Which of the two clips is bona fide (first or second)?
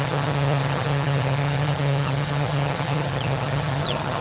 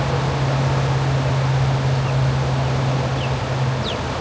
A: second